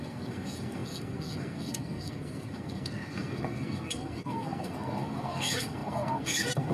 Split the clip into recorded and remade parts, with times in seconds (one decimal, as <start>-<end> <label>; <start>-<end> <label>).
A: 0.0-6.7 remade